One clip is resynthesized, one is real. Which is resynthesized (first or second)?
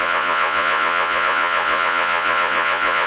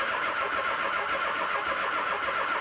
first